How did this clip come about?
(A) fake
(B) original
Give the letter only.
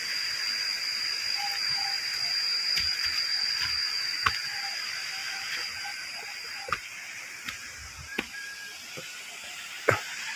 B